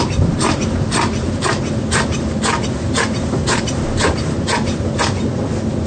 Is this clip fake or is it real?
real